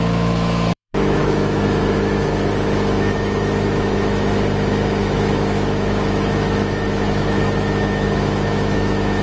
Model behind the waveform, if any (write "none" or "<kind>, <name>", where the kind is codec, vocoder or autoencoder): autoencoder, DAC-VAE